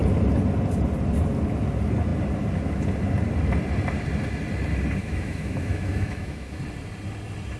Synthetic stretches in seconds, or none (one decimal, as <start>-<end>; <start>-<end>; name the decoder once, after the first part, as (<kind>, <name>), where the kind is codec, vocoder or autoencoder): 5.0-6.6 (autoencoder, DAC-VAE)